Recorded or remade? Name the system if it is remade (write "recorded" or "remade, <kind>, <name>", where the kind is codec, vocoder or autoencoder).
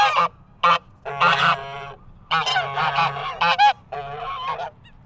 recorded